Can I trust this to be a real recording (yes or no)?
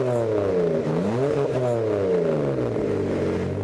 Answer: yes